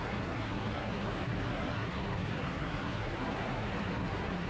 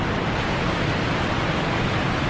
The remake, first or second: first